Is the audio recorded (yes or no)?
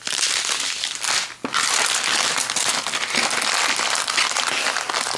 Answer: yes